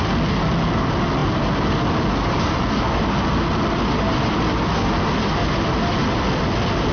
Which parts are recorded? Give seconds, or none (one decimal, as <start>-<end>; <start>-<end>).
0.0-6.9